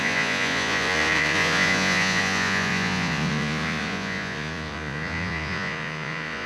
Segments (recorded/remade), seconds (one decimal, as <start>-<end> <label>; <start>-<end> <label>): 0.0-6.5 remade